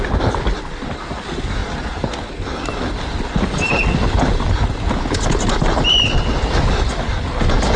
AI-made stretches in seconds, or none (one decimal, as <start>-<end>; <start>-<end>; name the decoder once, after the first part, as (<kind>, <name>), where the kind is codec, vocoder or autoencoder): none